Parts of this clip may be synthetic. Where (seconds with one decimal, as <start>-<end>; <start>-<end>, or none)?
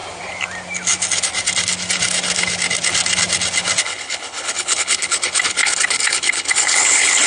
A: 3.8-7.3